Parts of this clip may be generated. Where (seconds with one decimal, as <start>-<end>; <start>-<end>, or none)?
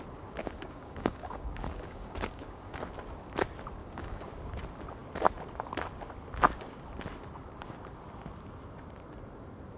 0.4-2.8; 3.8-4.3